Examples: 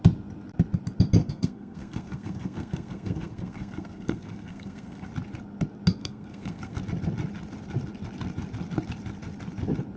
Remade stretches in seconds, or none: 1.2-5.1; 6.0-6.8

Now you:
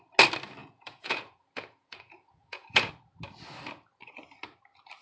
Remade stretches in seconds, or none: 0.6-2.9

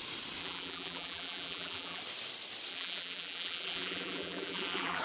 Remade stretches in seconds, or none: 0.4-2.0; 2.7-5.0

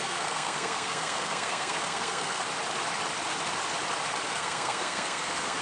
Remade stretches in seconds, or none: 0.0-2.4; 4.3-5.6

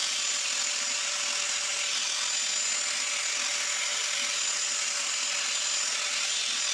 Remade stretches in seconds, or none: 0.0-1.0; 3.9-4.7

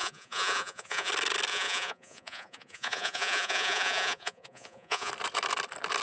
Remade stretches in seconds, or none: 0.0-1.1; 1.5-5.1

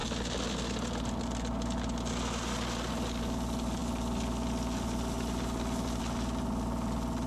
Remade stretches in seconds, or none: none

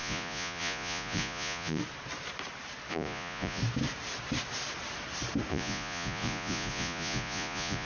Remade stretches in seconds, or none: 0.0-1.8; 2.9-3.6; 5.5-7.9